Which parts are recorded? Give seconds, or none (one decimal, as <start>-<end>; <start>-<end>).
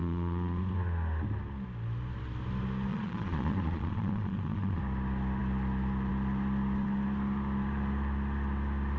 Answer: 0.6-2.9; 4.8-9.0